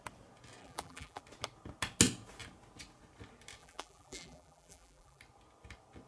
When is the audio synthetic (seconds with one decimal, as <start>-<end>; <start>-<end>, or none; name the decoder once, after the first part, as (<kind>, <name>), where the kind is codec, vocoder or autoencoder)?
0.6-1.2 (vocoder, BigVGAN v2); 3.6-5.2